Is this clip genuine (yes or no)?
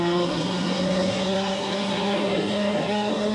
no